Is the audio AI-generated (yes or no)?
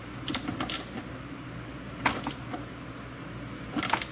no